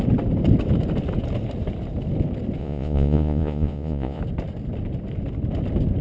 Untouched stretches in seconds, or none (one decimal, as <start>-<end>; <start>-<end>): 0.0-2.6; 4.2-6.0